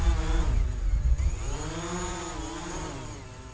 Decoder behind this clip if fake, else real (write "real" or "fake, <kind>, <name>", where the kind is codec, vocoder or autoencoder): real